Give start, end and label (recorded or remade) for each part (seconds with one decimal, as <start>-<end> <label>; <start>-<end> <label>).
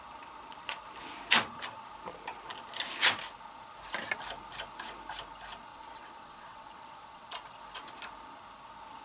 0.0-5.7 recorded; 5.7-7.3 remade; 7.3-9.0 recorded